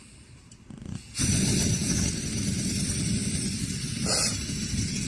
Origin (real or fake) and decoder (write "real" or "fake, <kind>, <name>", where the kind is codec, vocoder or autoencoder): real